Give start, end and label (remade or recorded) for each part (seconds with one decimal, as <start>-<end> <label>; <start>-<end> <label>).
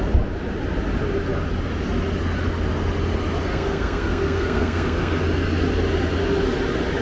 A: 0.0-3.5 recorded; 3.5-5.2 remade; 5.2-7.0 recorded